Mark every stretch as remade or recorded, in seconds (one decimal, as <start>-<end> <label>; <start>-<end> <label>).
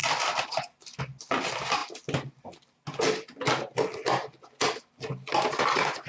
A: 0.0-6.1 recorded